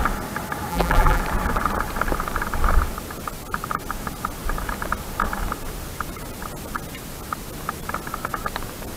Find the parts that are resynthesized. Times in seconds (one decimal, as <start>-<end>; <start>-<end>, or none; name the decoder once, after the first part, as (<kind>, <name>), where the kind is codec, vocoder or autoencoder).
0.7-1.2 (vocoder, BigVGAN v2)

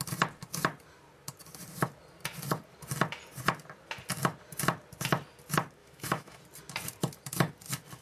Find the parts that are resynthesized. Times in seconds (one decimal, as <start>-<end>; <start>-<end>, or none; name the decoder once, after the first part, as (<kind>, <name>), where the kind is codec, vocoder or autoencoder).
5.8-6.4 (autoencoder, DAC-VAE)

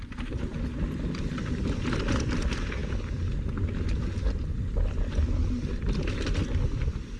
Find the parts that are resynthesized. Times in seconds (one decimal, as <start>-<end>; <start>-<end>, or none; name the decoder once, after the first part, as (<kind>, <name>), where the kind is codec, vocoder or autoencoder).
none

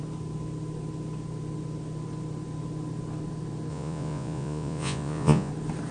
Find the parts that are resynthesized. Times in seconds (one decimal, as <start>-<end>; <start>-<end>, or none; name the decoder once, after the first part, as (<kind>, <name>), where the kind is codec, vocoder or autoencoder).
3.7-5.5 (vocoder, Vocos)

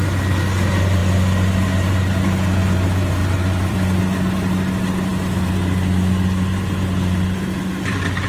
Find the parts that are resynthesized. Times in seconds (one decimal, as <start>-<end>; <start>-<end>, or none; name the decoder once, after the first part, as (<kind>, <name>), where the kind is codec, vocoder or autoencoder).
3.2-4.0 (vocoder, BigVGAN v2)

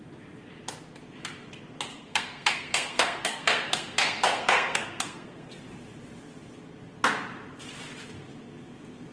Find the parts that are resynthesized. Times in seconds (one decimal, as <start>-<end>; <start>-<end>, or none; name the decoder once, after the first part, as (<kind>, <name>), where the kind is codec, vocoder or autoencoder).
1.9-5.6 (codec, SNAC)

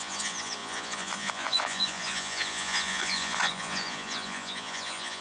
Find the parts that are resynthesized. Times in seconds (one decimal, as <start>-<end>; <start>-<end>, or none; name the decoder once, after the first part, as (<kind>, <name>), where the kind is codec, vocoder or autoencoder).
0.0-5.2 (vocoder, Vocos)